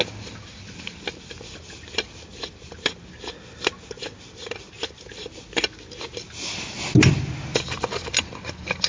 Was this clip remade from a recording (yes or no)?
no